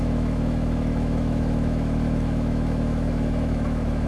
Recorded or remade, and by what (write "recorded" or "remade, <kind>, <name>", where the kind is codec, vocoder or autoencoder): remade, autoencoder, DAC-VAE